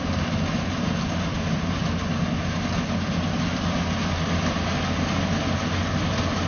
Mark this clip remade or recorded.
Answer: recorded